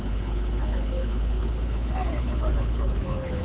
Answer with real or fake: fake